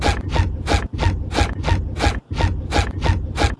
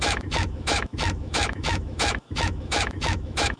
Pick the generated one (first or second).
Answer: second